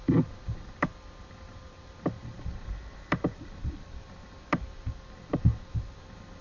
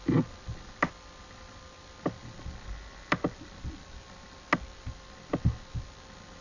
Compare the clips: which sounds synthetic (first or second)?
first